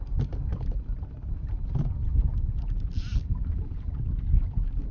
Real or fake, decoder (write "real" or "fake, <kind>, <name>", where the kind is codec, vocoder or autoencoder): real